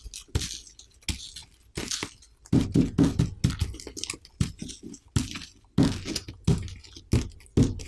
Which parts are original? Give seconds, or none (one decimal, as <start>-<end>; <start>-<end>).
0.0-3.6; 4.3-7.9